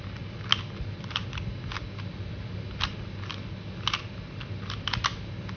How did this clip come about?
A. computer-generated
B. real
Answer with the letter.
B